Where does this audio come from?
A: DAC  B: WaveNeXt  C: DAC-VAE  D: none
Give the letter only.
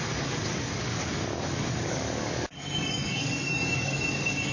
A